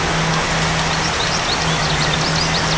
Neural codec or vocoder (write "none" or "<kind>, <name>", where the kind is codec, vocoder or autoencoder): none